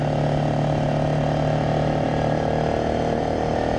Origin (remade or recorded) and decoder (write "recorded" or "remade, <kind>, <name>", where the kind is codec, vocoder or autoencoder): recorded